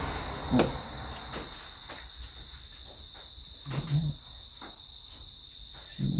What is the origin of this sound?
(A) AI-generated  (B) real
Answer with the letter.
B